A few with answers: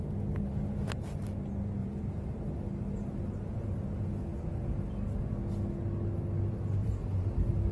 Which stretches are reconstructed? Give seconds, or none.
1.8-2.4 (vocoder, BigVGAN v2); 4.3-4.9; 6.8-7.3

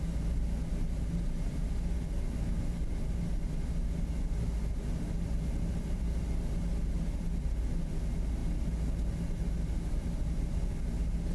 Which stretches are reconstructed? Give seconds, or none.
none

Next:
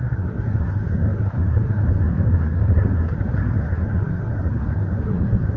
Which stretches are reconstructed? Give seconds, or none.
0.0-5.6 (codec, SNAC)